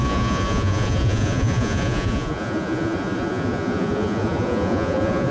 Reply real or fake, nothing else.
fake